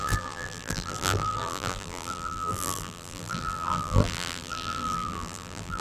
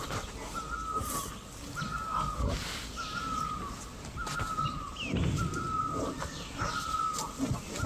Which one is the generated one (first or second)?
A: first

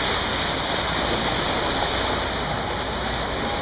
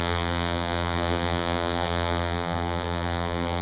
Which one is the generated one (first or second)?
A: second